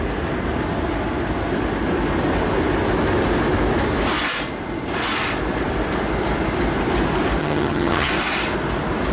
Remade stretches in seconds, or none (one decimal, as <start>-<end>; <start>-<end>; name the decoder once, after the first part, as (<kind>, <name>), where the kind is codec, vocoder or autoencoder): 7.4-8.1 (vocoder, HiFi-GAN)